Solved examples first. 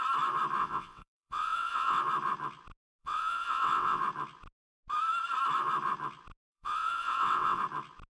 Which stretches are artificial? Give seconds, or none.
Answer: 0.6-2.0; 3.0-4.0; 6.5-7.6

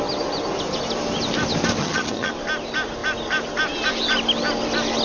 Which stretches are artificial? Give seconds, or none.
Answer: 1.8-2.3